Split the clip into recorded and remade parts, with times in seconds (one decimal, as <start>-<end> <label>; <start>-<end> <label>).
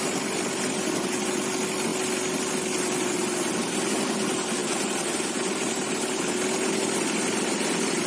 0.0-8.1 recorded